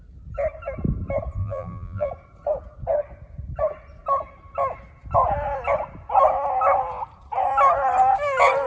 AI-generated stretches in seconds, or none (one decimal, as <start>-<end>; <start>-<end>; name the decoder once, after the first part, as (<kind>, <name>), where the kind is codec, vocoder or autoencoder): 1.4-2.1 (vocoder, BigVGAN v2)